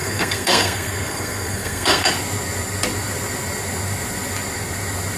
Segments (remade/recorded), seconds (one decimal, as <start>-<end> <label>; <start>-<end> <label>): 0.0-2.1 remade; 2.1-5.2 recorded